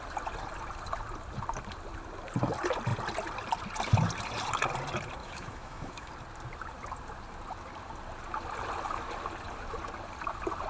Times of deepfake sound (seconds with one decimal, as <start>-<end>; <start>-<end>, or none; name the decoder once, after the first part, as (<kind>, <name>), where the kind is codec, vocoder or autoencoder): 5.2-6.1 (autoencoder, DAC-VAE)